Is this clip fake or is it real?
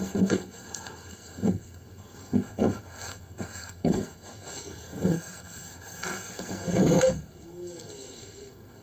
fake